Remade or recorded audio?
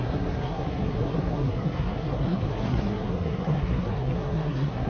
remade